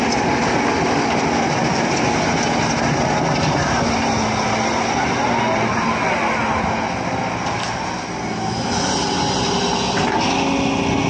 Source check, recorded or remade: recorded